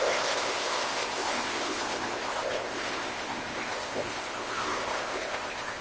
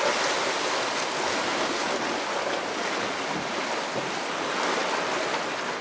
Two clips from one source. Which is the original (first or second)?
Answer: second